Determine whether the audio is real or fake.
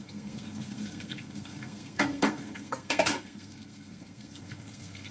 fake